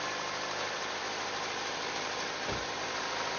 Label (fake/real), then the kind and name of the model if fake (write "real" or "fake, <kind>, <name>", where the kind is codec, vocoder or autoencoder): real